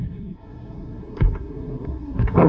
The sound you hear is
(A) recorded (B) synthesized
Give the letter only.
B